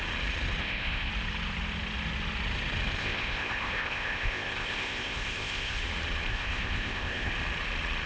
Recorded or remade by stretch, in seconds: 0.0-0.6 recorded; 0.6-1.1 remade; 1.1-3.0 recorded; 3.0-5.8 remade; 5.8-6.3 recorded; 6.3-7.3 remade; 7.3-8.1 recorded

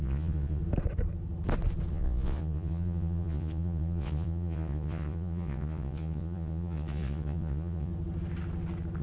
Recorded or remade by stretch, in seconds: 0.0-0.6 remade; 0.6-1.9 recorded; 1.9-7.9 remade; 7.9-9.0 recorded

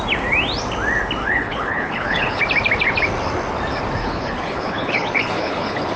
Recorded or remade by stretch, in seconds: 0.0-1.2 recorded; 1.2-2.4 remade; 2.4-4.0 recorded; 4.0-6.0 remade